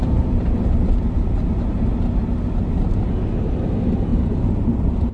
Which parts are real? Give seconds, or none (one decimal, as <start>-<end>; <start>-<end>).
1.8-4.1